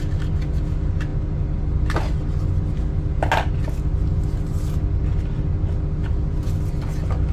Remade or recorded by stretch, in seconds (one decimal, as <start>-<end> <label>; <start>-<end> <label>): 0.0-7.3 recorded